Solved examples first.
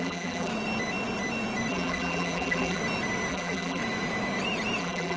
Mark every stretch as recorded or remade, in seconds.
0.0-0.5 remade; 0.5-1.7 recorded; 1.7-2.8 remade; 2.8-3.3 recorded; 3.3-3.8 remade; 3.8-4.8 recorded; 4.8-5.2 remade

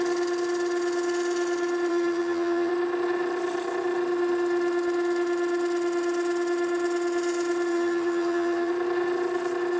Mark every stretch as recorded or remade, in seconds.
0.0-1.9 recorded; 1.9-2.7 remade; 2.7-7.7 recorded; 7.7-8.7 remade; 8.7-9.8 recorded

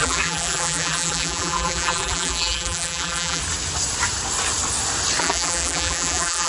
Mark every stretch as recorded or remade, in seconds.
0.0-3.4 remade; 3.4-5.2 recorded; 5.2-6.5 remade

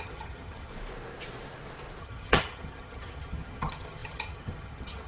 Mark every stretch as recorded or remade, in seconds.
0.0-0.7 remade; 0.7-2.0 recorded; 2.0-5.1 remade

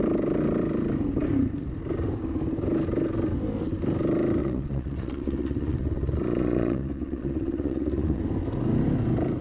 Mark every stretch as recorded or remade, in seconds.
0.0-4.4 recorded; 4.4-8.2 remade; 8.2-9.4 recorded

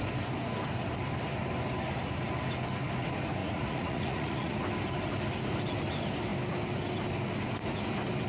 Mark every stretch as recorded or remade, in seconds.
0.0-3.4 recorded; 3.4-4.6 remade; 4.6-8.3 recorded

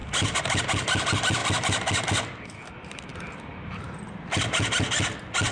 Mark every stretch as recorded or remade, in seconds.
0.0-5.5 recorded

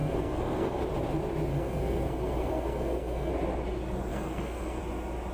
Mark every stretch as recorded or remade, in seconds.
0.0-0.8 remade; 0.8-1.5 recorded; 1.5-3.3 remade; 3.3-4.1 recorded; 4.1-4.8 remade; 4.8-5.3 recorded